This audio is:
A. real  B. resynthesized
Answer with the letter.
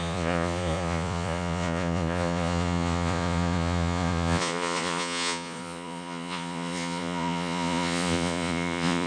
B